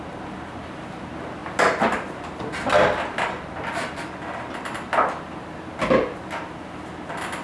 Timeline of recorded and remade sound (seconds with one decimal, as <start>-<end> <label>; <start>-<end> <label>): 0.0-7.4 recorded